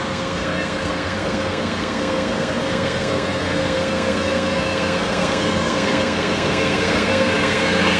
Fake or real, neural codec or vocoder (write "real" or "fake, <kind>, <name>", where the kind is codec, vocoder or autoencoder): fake, codec, SNAC